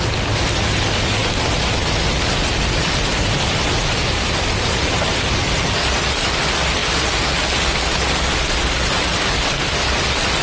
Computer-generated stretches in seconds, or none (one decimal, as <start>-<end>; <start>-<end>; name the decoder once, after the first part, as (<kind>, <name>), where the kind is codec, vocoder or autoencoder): 0.0-1.2 (vocoder, BigVGAN v2); 4.0-6.8; 9.3-10.4